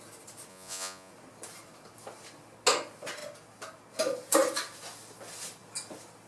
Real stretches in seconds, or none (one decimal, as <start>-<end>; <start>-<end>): 0.0-0.5; 1.1-6.3